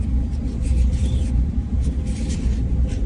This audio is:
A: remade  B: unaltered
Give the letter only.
B